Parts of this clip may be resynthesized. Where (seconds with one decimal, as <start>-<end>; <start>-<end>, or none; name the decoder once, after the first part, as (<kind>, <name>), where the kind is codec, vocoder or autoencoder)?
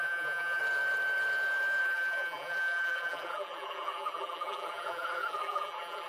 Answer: 0.0-0.6 (vocoder, BigVGAN v2); 1.8-6.1